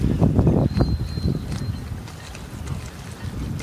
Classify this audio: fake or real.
real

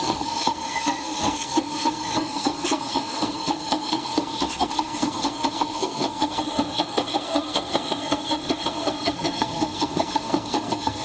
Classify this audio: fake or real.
fake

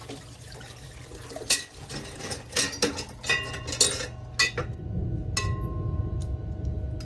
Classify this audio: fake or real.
real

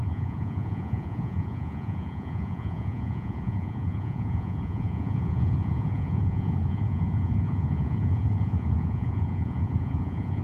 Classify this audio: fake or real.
fake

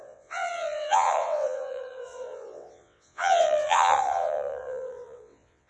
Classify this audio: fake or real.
fake